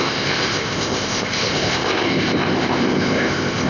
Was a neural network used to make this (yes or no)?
yes